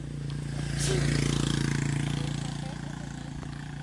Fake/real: real